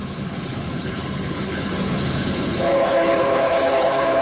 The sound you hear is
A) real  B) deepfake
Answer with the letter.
B